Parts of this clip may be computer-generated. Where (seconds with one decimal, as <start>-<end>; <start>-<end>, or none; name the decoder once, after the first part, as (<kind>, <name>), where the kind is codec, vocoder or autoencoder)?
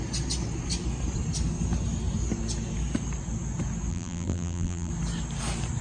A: 3.9-4.9 (vocoder, BigVGAN v2)